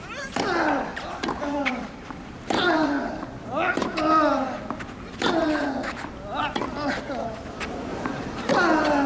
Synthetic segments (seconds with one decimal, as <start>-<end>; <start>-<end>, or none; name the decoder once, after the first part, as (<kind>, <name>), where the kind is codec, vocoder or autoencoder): 0.9-3.4 (vocoder, BigVGAN v2); 7.9-8.5